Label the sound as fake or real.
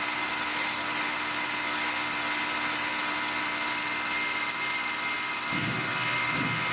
real